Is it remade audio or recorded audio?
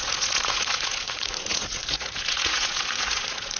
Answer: remade